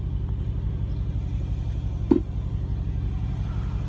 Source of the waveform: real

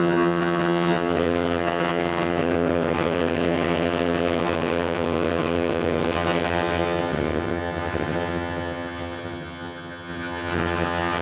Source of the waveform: fake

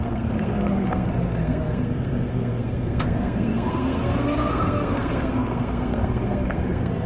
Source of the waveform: fake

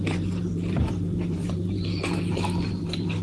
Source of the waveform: fake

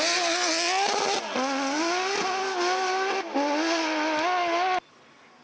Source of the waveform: real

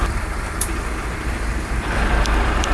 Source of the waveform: fake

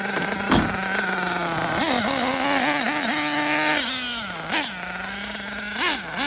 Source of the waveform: real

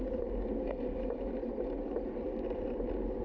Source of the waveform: real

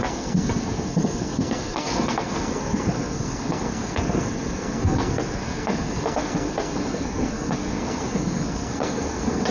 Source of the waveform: fake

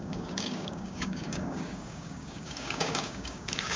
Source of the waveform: fake